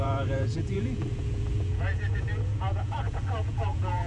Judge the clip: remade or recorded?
remade